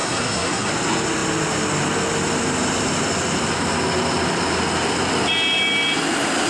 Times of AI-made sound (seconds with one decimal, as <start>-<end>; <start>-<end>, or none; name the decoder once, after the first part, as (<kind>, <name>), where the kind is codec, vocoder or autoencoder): 0.0-0.7 (codec, SNAC)